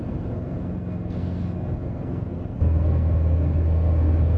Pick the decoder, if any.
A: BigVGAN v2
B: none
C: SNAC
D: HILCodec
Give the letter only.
C